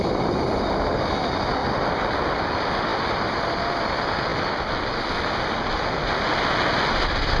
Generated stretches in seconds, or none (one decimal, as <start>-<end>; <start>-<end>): 1.6-2.2